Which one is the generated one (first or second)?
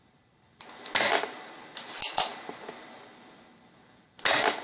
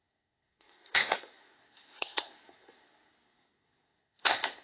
second